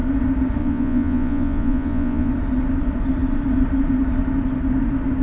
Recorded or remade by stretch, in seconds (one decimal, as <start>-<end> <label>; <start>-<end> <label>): 0.0-0.6 recorded; 0.6-2.3 remade; 2.3-5.2 recorded